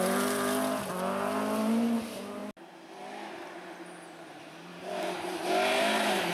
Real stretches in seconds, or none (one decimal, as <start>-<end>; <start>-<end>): 0.0-4.7; 5.5-6.3